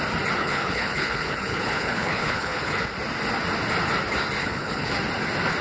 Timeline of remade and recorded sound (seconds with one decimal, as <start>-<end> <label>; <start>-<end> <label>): 0.0-0.4 recorded; 0.4-2.8 remade; 2.8-4.4 recorded; 4.4-4.9 remade; 4.9-5.6 recorded